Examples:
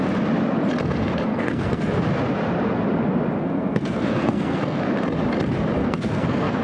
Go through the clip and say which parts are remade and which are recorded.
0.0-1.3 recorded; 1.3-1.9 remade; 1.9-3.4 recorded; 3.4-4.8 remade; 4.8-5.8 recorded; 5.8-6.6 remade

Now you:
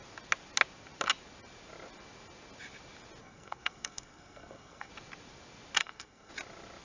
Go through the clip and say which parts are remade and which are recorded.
0.0-3.2 recorded; 3.2-4.9 remade; 4.9-5.8 recorded; 5.8-6.3 remade; 6.3-6.8 recorded